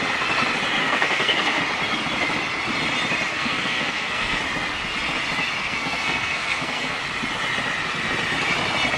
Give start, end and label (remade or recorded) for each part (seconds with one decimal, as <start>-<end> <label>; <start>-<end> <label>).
0.0-0.8 recorded; 0.8-1.6 remade; 1.6-3.3 recorded; 3.3-4.4 remade; 4.4-5.6 recorded; 5.6-7.0 remade; 7.0-9.0 recorded